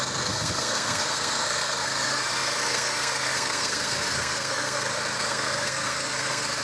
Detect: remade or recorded remade